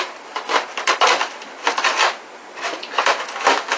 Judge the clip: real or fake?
real